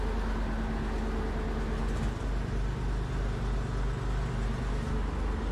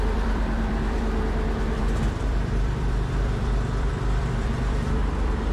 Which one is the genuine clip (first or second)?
first